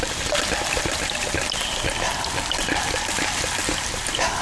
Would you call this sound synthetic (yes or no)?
no